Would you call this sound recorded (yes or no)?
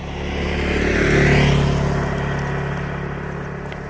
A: yes